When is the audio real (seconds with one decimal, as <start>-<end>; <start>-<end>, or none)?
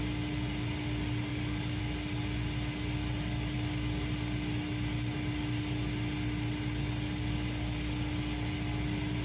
0.0-1.3; 1.8-9.2